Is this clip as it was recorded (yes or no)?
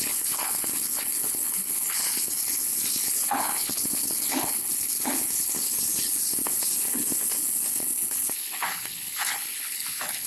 no